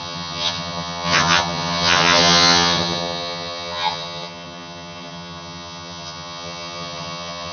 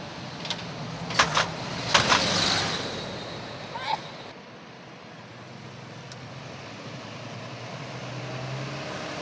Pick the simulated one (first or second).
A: first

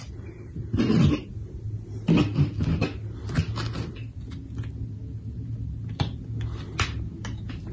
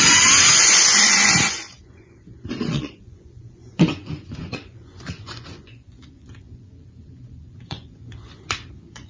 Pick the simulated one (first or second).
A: second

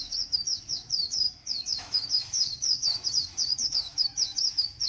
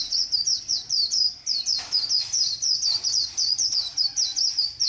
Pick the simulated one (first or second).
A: first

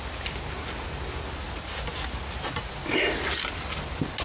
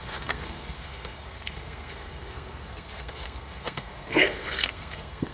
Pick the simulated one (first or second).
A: second